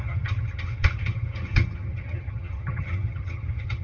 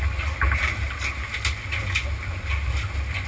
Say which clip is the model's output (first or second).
first